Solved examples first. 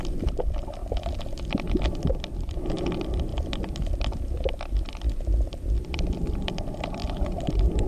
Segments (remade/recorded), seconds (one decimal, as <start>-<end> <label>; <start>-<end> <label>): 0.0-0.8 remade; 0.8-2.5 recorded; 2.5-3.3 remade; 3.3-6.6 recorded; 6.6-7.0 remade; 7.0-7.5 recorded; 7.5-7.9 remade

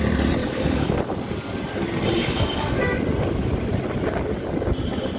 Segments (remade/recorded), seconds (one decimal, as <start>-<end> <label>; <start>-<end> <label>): 0.0-0.4 recorded; 0.4-1.0 remade; 1.0-2.2 recorded; 2.2-2.8 remade; 2.8-5.2 recorded

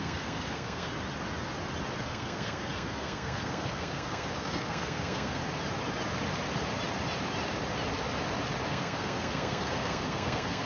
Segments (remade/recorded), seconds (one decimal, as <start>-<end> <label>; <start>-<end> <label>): 0.0-0.9 remade; 0.9-2.0 recorded; 2.0-5.4 remade; 5.4-8.7 recorded; 8.7-10.7 remade

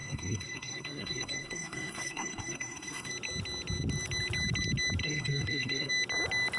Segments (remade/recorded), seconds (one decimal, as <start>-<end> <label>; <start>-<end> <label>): 0.0-3.1 remade; 3.1-5.0 recorded; 5.0-5.9 remade; 5.9-6.6 recorded